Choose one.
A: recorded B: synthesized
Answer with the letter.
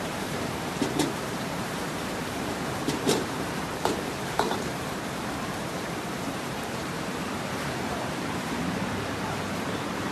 B